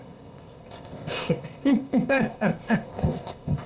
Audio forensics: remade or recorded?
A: remade